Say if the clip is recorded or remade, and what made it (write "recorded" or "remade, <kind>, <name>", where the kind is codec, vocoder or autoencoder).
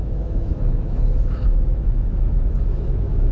remade, autoencoder, DAC-VAE